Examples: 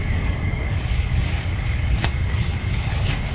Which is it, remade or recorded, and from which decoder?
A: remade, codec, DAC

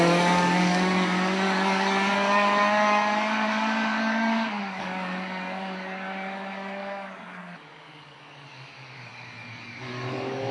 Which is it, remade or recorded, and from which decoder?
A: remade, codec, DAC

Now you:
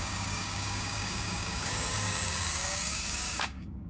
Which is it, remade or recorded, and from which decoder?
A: remade, codec, DAC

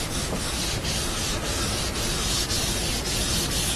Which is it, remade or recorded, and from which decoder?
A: recorded